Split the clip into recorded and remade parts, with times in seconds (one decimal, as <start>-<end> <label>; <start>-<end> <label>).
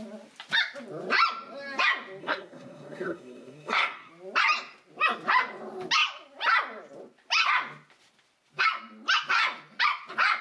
0.0-2.2 recorded; 2.2-4.1 remade; 4.1-10.4 recorded